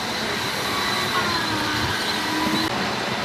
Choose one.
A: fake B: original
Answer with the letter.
B